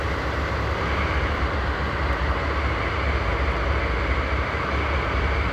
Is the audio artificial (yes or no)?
no